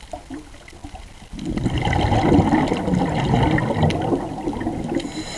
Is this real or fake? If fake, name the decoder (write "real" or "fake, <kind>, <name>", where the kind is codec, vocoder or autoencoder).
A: real